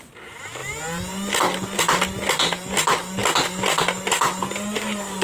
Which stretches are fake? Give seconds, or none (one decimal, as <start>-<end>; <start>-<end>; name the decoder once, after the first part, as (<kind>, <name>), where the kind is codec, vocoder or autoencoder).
none